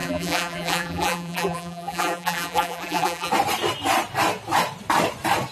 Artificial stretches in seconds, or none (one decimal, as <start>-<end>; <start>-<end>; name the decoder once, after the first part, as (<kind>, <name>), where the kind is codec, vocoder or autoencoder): 0.0-3.3 (vocoder, BigVGAN v2)